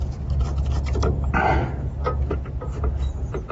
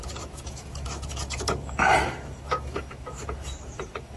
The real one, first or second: first